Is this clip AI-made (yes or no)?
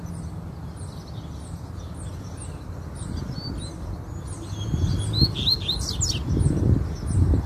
no